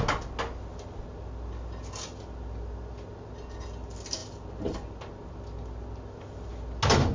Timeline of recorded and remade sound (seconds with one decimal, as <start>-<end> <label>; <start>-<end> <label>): 0.0-7.1 recorded